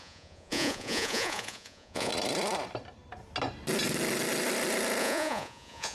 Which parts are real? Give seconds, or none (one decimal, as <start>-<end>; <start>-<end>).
2.1-5.0